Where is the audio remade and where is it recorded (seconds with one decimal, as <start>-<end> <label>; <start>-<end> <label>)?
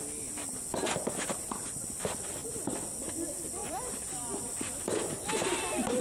0.0-0.8 recorded; 0.8-1.8 remade; 1.8-3.6 recorded; 3.6-4.5 remade; 4.5-6.0 recorded